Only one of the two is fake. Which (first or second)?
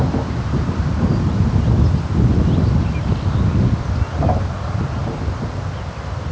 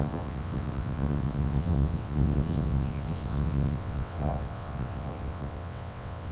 second